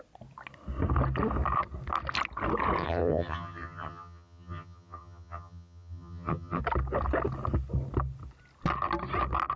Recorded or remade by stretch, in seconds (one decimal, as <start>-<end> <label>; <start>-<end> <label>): 0.0-2.8 recorded; 2.8-6.6 remade; 6.6-9.6 recorded